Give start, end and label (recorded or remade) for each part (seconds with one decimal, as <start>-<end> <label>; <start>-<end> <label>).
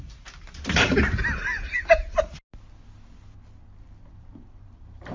0.0-1.0 remade; 1.0-4.1 recorded; 4.1-5.1 remade